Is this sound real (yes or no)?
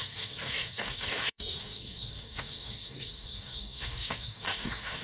no